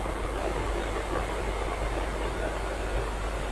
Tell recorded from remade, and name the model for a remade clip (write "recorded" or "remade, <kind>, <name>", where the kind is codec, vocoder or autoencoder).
recorded